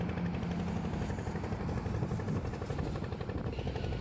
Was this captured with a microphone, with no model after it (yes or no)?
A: yes